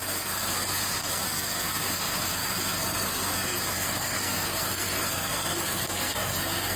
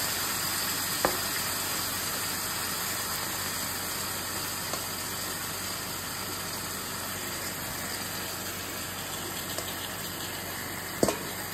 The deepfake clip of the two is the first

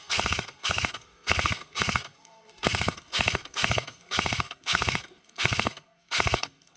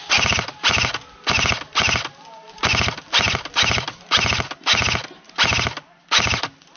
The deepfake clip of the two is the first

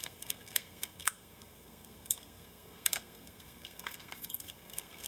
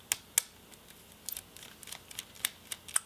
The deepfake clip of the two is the first